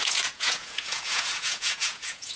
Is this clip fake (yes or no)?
yes